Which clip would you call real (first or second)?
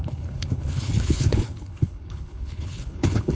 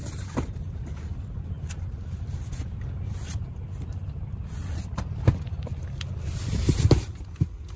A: second